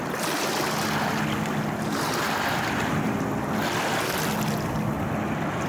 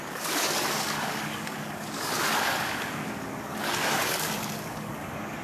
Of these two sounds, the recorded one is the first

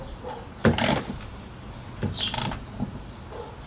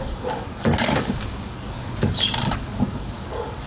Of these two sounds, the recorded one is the first